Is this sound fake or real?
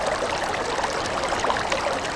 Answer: real